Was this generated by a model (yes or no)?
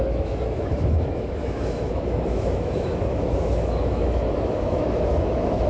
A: yes